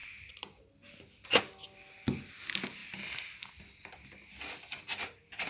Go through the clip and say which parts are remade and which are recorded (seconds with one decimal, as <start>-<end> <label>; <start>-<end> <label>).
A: 0.0-5.5 recorded